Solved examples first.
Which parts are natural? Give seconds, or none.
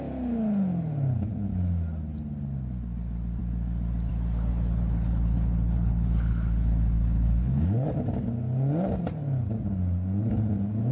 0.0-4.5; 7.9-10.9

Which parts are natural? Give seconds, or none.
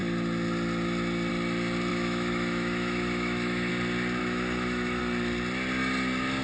0.0-1.9; 3.7-4.2; 5.0-6.4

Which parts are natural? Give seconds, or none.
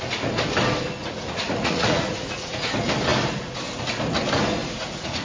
0.0-1.0; 2.7-4.6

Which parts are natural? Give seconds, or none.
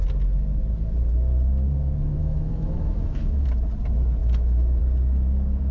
0.0-2.2; 3.5-4.2; 4.8-5.7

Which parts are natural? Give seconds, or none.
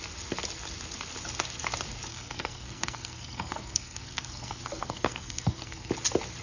0.0-2.1; 5.9-6.4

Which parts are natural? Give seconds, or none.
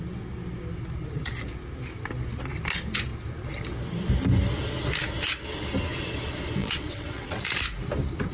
0.0-6.6; 7.4-8.3